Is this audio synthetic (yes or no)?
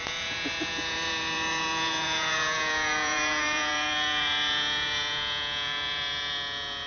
yes